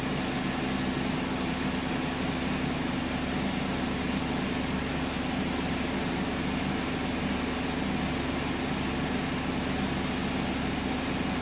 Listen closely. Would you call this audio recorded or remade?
recorded